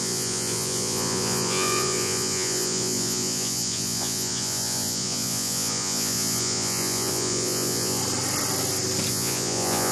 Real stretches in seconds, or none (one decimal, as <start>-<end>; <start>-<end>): 8.0-9.1